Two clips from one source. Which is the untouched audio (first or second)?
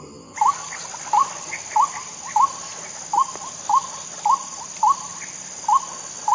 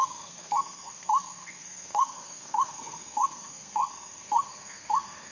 first